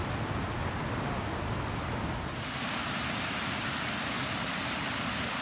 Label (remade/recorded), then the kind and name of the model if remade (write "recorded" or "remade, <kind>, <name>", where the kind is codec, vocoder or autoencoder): recorded